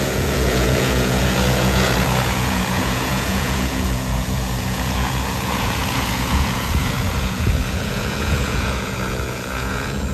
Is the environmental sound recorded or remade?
remade